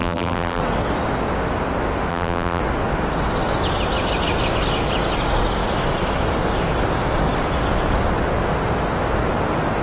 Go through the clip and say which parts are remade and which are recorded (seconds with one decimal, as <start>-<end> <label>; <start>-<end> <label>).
0.0-0.6 remade; 0.6-2.1 recorded; 2.1-2.6 remade; 2.6-9.8 recorded